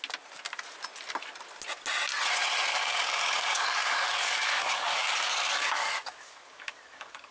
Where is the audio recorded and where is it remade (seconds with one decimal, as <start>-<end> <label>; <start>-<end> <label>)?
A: 0.0-2.7 recorded; 2.7-7.3 remade